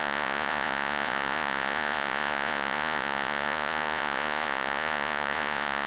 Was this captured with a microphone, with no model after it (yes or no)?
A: no